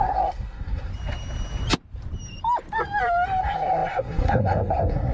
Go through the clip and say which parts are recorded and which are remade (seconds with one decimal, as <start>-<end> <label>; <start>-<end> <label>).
0.0-0.9 remade; 0.9-3.4 recorded; 3.4-5.1 remade